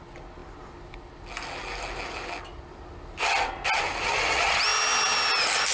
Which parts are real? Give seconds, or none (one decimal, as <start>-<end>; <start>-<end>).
0.0-5.7

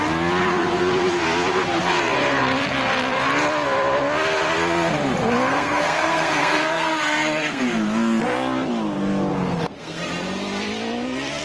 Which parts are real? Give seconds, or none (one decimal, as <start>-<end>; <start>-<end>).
0.0-5.5; 7.6-9.3; 10.0-11.4